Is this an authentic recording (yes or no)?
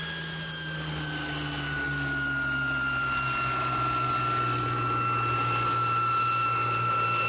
yes